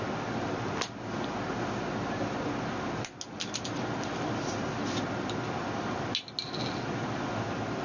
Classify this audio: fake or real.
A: real